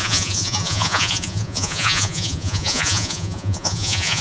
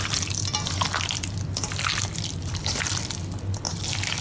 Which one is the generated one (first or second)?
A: first